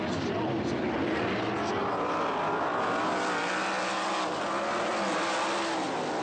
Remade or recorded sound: recorded